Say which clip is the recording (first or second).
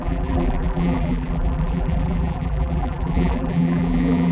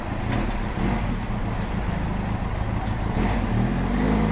second